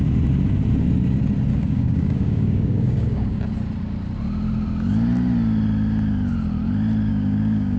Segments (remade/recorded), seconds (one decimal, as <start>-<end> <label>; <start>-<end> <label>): 0.0-1.5 recorded; 1.5-3.4 remade; 3.4-7.1 recorded; 7.1-7.8 remade